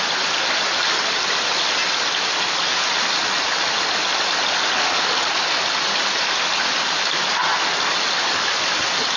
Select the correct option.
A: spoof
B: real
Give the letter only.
B